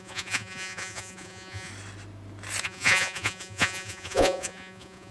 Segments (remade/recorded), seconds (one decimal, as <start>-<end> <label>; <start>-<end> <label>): 0.0-1.7 remade; 1.7-2.6 recorded; 2.6-5.1 remade